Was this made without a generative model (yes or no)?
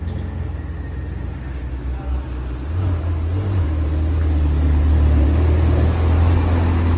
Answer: yes